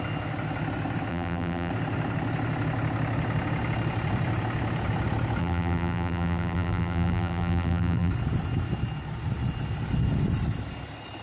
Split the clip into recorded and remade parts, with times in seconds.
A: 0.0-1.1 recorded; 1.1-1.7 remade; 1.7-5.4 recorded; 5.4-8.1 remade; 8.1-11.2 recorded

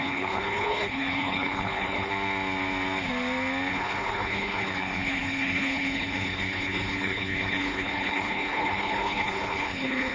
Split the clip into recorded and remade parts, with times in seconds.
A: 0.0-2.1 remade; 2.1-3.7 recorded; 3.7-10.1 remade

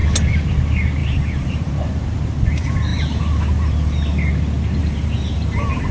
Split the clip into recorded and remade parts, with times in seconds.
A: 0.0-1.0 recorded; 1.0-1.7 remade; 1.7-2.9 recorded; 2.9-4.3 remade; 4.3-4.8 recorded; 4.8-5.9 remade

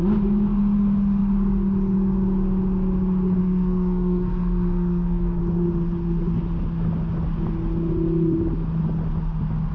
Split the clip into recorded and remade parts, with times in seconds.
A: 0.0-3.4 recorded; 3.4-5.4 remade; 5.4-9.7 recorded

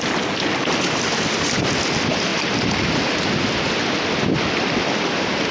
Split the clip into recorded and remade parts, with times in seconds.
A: 0.0-2.3 recorded; 2.3-3.1 remade; 3.1-5.5 recorded

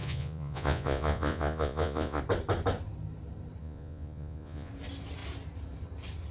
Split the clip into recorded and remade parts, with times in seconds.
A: 0.0-2.2 remade; 2.2-3.6 recorded; 3.6-4.7 remade; 4.7-6.3 recorded

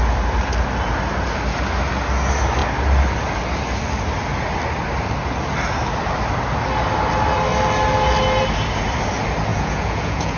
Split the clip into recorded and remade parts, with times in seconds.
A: 0.0-9.5 recorded; 9.5-10.4 remade

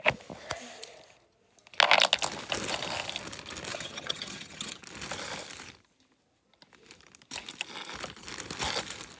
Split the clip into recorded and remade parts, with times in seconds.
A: 0.0-3.7 recorded; 3.7-4.8 remade; 4.8-9.2 recorded